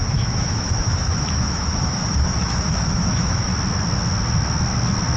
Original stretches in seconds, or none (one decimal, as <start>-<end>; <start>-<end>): 3.5-5.2